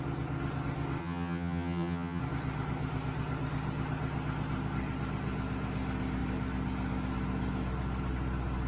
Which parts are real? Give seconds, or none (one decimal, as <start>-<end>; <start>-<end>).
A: 0.0-1.0; 2.2-8.7